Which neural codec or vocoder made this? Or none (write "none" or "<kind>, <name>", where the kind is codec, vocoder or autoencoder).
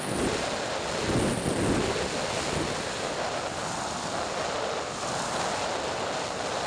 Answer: none